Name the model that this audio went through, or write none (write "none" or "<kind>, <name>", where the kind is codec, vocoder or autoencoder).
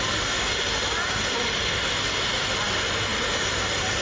none